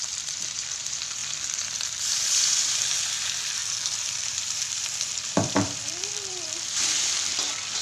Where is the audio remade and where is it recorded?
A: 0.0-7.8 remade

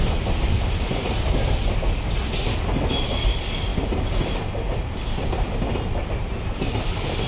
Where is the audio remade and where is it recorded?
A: 0.0-7.3 recorded

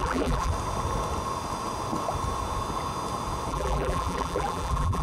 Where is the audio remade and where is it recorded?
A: 0.0-0.5 remade; 0.5-3.5 recorded; 3.5-5.0 remade